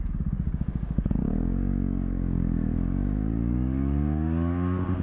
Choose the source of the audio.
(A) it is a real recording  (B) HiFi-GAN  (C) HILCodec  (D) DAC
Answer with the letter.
D